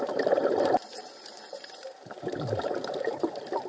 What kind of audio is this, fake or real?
fake